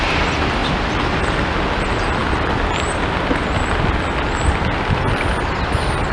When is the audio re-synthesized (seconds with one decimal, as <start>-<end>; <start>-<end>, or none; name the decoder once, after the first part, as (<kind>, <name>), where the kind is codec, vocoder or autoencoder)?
none